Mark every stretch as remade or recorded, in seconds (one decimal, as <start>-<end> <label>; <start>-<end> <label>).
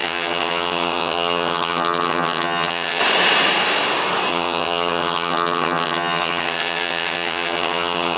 0.0-3.0 remade; 3.0-4.3 recorded; 4.3-8.2 remade